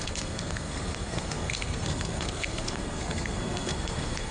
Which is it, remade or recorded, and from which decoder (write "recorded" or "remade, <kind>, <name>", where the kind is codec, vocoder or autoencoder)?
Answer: remade, codec, SNAC